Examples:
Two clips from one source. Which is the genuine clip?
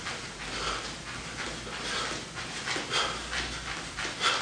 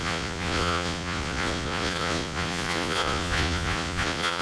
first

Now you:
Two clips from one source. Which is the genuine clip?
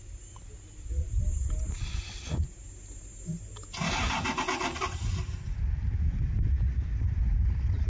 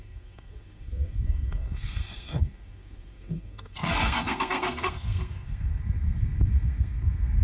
first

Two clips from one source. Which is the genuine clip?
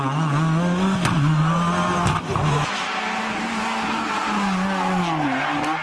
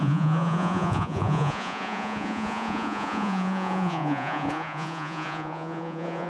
first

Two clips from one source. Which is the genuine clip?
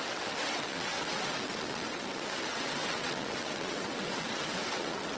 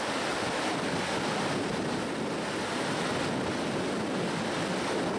second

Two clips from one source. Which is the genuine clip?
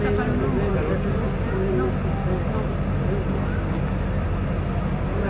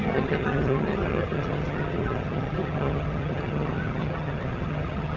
first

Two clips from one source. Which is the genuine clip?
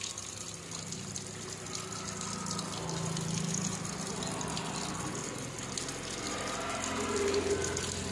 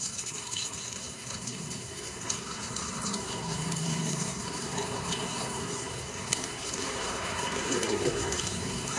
first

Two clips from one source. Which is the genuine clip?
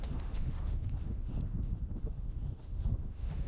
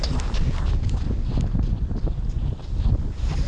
second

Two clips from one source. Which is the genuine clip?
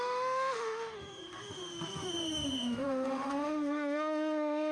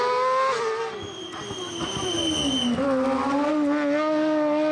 second